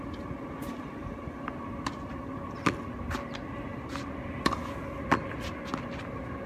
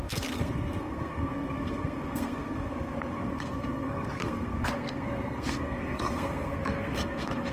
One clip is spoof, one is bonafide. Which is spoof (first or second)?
second